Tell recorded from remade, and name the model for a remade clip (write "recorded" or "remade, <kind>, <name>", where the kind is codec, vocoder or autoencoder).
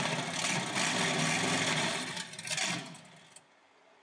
recorded